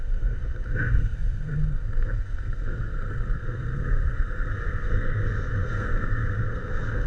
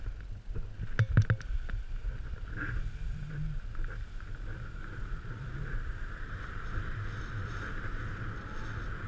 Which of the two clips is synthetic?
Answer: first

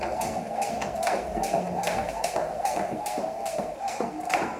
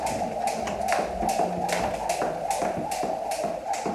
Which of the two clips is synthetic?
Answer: first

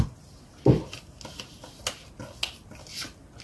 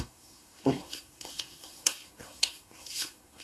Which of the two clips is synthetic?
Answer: second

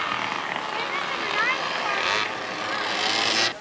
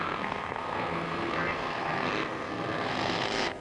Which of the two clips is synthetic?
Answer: second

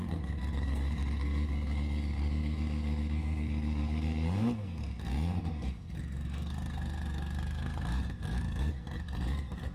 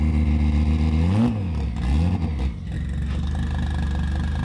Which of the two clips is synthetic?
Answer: first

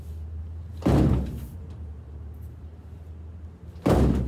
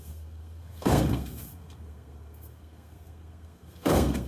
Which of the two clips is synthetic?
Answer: second